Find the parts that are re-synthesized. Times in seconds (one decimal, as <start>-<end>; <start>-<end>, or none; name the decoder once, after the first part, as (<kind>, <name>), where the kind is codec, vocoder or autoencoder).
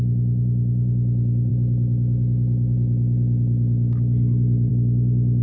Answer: none